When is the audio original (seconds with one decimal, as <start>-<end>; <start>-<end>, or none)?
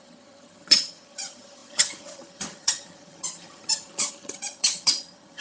none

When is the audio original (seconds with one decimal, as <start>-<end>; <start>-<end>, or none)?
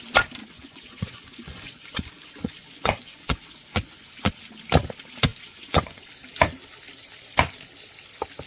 0.0-0.4; 4.3-5.3; 6.1-8.5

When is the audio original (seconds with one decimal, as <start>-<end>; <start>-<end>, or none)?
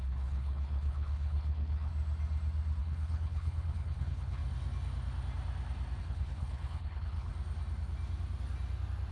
1.9-2.8; 4.4-6.0; 7.3-9.1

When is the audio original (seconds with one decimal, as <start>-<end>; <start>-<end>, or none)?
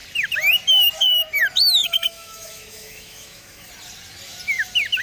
0.0-1.8; 3.7-5.0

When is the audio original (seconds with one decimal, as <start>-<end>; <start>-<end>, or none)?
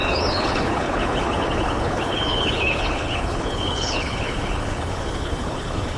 none